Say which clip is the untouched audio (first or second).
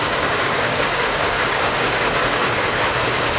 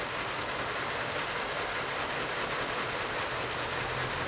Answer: second